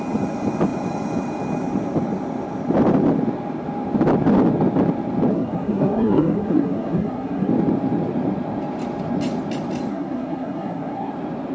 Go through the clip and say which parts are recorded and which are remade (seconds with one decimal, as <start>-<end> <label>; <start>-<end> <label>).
0.0-5.3 recorded; 5.3-7.5 remade; 7.5-9.9 recorded; 9.9-11.1 remade; 11.1-11.5 recorded